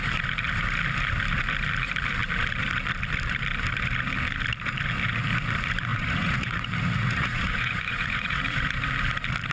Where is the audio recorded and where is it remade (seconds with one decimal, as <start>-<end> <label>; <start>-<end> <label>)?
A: 0.0-5.9 recorded; 5.9-8.4 remade; 8.4-9.5 recorded